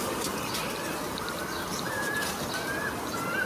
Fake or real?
real